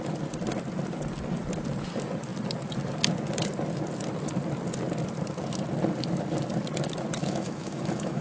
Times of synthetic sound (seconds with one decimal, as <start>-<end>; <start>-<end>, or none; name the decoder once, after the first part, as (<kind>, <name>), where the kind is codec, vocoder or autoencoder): 7.2-8.2 (autoencoder, DAC-VAE)